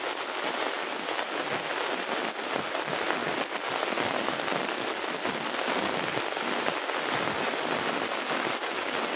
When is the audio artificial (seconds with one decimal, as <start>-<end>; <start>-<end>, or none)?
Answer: none